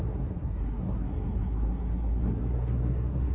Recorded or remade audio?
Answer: remade